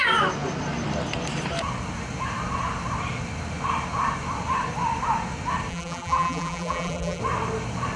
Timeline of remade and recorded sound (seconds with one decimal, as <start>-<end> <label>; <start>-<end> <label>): 0.0-5.7 recorded; 5.7-7.2 remade; 7.2-8.0 recorded